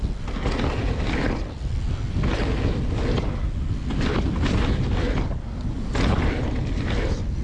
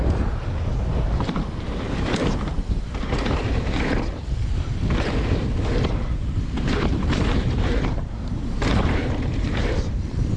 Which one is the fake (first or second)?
second